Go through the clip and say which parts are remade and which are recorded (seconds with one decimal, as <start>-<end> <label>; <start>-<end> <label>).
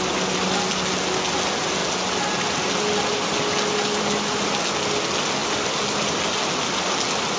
0.0-7.4 recorded